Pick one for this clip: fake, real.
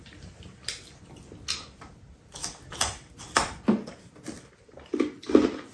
real